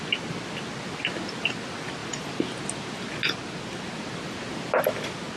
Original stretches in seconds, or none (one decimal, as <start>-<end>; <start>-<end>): 0.0-5.4

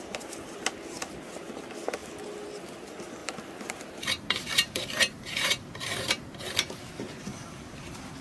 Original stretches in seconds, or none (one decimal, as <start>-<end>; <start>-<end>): 0.0-3.2; 6.8-8.2

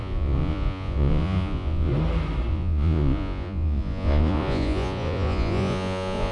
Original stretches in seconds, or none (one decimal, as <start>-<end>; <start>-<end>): 1.9-2.5